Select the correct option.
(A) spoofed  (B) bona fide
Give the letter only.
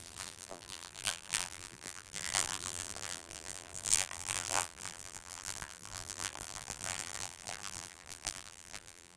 A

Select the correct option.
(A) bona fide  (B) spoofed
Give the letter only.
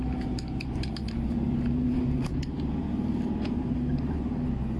B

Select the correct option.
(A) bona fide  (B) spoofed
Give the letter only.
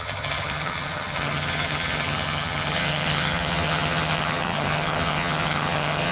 B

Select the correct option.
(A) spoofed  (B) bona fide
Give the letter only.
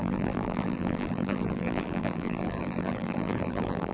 A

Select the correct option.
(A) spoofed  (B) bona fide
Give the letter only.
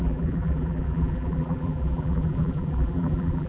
A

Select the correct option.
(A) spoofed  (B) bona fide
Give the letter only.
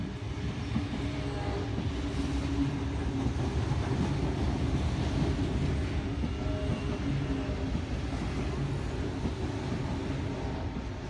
B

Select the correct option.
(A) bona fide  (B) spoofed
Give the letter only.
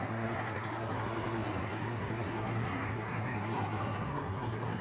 B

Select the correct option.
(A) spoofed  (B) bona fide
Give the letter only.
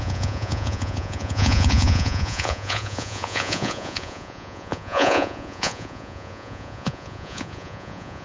A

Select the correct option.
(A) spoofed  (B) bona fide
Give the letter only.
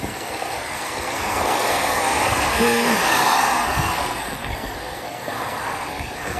A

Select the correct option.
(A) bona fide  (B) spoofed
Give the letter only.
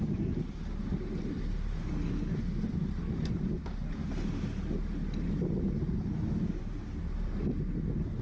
A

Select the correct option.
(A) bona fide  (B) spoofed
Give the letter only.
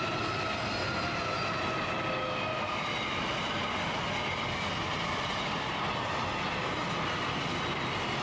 A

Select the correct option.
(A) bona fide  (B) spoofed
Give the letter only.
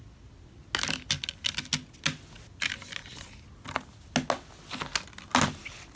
A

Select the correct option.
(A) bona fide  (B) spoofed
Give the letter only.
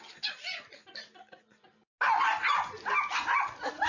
A